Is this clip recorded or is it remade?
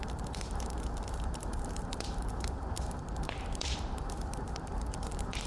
remade